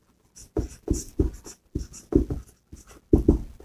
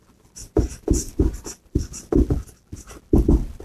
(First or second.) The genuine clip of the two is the first